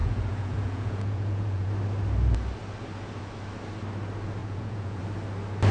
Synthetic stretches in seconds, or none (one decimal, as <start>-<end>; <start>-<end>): 0.0-1.7; 4.4-5.0